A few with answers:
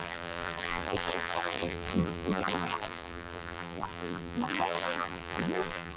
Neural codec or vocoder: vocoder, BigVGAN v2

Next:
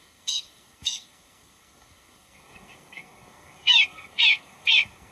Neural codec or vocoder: codec, SNAC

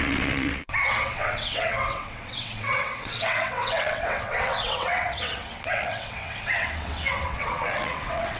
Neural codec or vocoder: vocoder, WaveNeXt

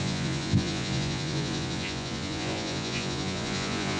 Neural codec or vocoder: vocoder, Vocos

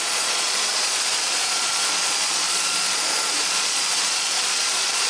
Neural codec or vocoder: vocoder, Vocos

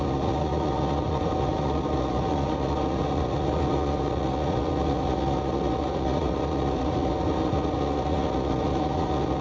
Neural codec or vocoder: vocoder, Vocos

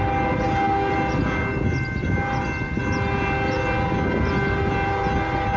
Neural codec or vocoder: none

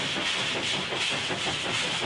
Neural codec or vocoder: none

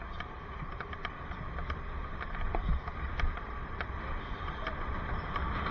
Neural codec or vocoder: vocoder, BigVGAN v2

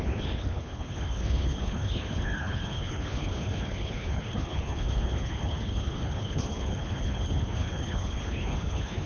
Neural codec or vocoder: codec, HILCodec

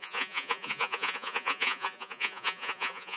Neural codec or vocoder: vocoder, Vocos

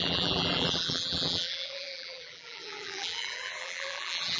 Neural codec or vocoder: vocoder, BigVGAN v2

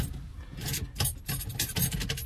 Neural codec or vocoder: none